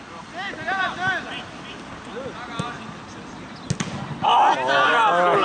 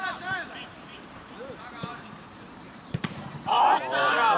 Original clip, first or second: first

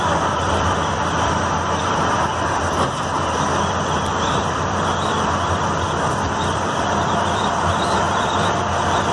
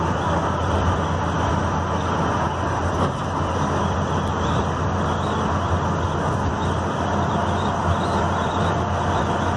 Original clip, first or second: second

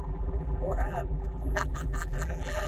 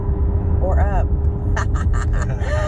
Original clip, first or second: second